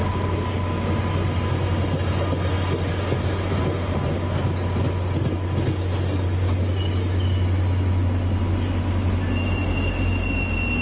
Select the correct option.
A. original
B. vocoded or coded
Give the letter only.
A